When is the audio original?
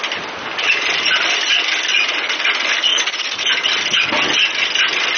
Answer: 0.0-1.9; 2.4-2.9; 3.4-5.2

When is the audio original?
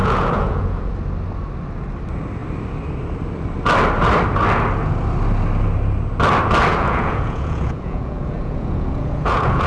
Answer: 0.9-6.7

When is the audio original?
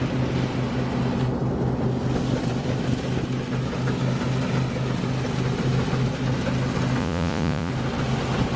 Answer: 0.0-7.0; 7.7-8.6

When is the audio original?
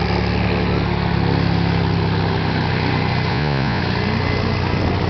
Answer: 0.0-3.3; 3.8-5.1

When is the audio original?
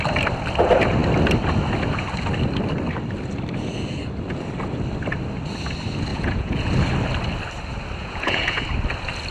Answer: 0.0-6.1; 6.7-8.0; 8.6-9.3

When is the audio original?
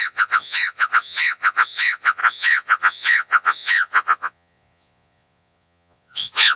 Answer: none